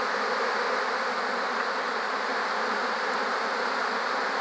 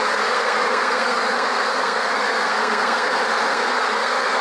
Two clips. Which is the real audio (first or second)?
first